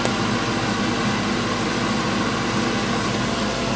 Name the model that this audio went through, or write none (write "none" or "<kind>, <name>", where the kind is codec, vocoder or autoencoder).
none